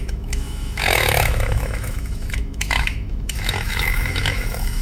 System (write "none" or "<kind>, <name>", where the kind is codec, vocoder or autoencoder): autoencoder, DAC-VAE